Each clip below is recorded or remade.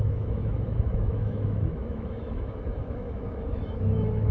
remade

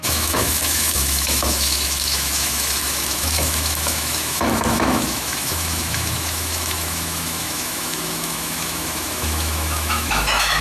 remade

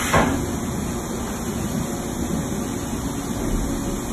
recorded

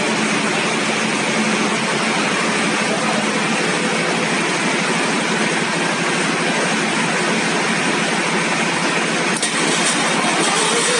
recorded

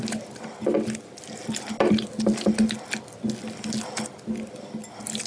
recorded